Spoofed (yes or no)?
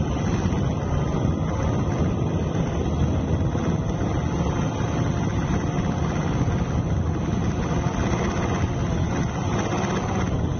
no